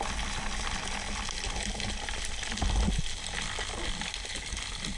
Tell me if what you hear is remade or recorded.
recorded